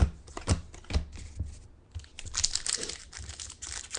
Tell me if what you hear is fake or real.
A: real